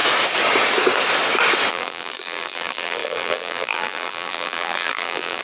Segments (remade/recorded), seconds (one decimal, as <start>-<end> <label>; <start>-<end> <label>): 0.0-1.7 recorded; 1.7-5.4 remade